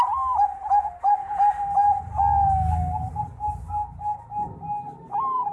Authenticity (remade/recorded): recorded